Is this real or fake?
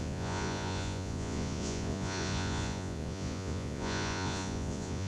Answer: fake